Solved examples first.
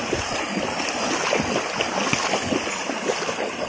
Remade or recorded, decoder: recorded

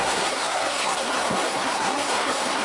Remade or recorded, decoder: remade, codec, SNAC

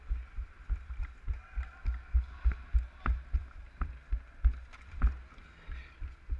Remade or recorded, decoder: recorded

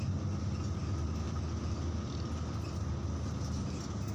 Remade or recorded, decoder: recorded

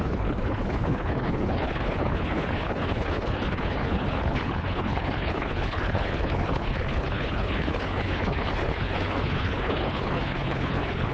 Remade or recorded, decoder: remade, codec, HILCodec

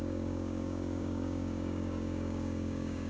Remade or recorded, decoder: remade, codec, DAC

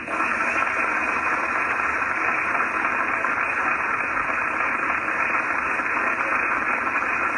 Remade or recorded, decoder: recorded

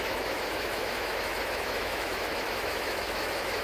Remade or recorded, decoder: remade, autoencoder, DAC-VAE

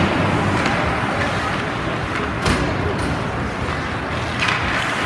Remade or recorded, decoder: recorded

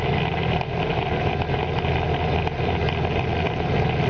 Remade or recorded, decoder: recorded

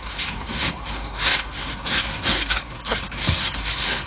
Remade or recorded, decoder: remade, codec, SNAC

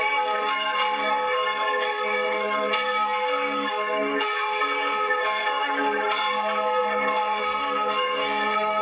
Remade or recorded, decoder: remade, codec, SNAC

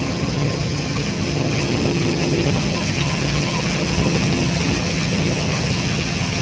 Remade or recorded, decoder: remade, vocoder, HiFi-GAN